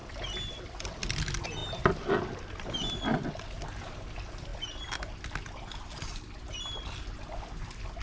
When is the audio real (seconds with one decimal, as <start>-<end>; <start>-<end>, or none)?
0.0-8.0